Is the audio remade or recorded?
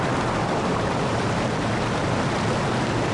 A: remade